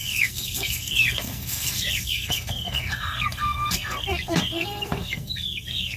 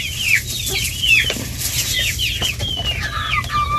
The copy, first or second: first